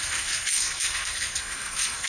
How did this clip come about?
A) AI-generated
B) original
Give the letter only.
A